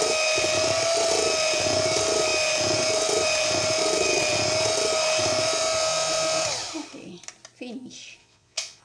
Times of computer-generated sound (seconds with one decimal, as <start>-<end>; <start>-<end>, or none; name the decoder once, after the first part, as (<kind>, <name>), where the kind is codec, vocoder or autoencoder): 8.2-8.8 (vocoder, Vocos)